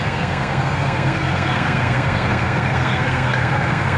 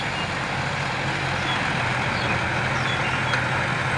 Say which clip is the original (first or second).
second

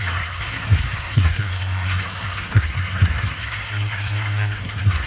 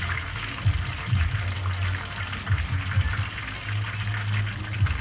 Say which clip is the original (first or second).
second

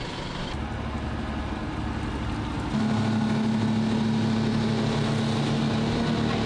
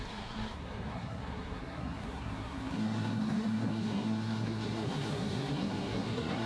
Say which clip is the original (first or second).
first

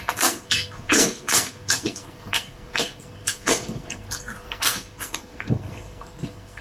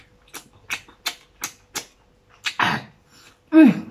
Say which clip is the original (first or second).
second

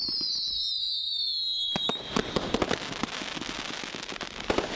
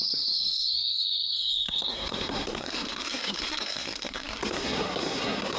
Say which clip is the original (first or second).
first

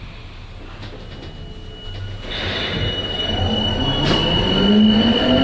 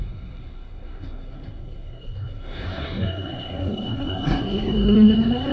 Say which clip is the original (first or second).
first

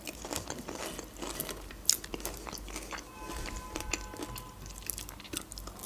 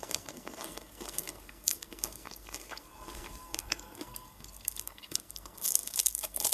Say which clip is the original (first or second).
first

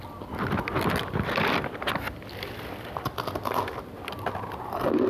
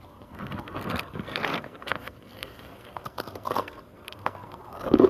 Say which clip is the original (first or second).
first